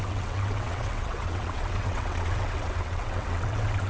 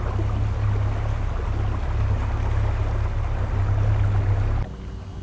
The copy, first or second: first